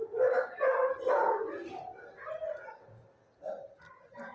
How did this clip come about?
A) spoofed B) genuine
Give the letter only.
B